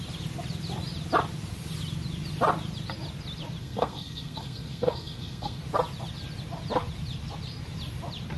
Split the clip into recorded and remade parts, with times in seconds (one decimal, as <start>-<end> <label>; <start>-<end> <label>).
0.0-3.6 recorded; 3.6-5.6 remade; 5.6-8.4 recorded